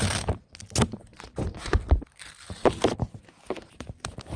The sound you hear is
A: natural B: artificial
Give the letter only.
A